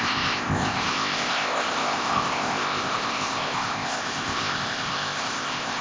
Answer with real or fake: fake